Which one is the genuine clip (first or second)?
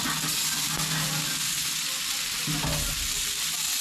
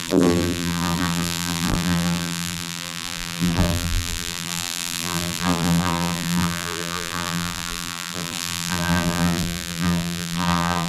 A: first